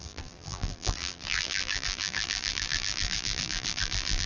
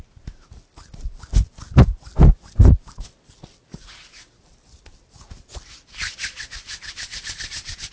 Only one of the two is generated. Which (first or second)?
first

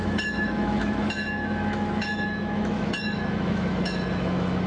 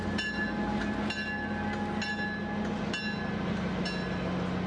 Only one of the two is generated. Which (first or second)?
first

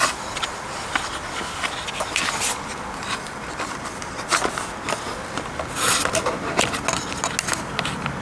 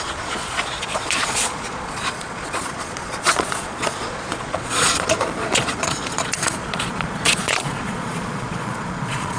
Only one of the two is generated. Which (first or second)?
second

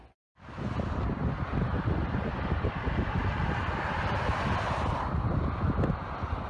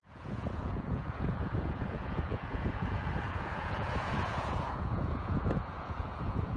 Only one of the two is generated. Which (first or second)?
second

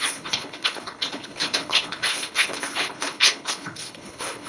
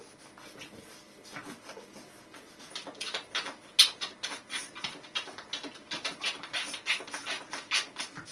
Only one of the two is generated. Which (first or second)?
first